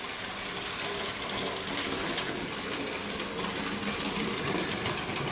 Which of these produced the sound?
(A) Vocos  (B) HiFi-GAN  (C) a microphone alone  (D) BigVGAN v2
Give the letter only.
C